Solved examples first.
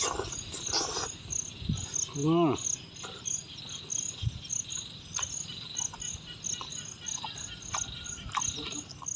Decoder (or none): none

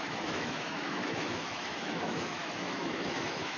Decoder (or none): autoencoder, DAC-VAE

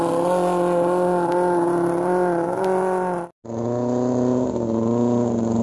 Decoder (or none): none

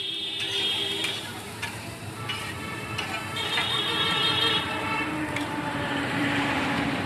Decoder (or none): vocoder, BigVGAN v2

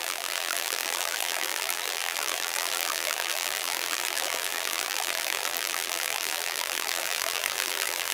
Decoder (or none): vocoder, BigVGAN v2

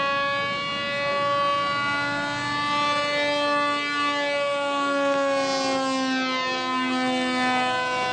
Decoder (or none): none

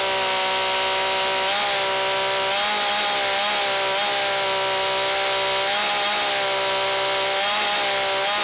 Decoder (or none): none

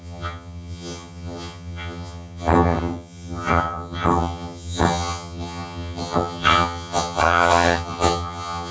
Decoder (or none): vocoder, HiFi-GAN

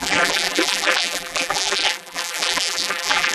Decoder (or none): vocoder, BigVGAN v2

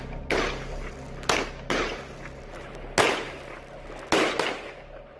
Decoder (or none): none